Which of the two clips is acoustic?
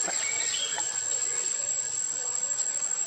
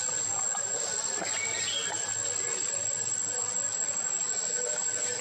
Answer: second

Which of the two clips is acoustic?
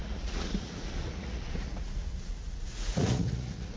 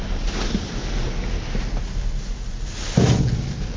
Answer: second